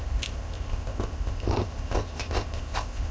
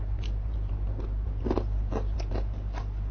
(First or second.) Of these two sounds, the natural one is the second